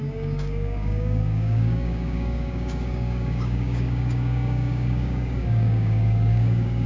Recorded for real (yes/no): no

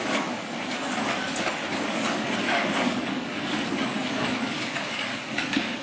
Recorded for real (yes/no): no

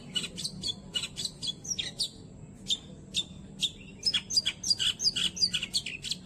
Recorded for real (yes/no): yes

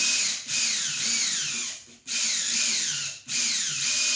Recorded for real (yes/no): yes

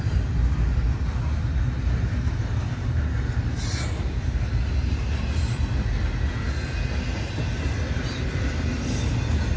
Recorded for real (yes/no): yes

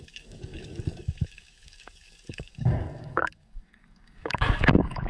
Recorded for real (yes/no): no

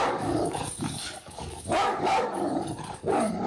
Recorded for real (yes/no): no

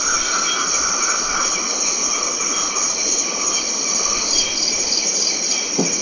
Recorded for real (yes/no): yes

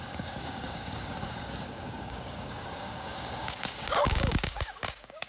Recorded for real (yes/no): no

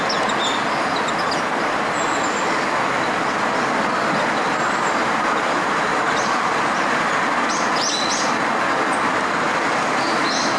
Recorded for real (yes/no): yes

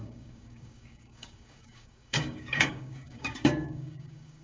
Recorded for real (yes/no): no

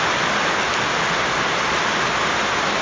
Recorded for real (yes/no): yes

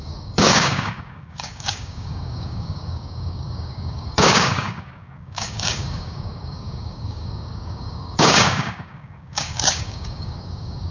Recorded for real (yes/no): no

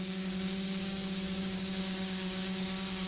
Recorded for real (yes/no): no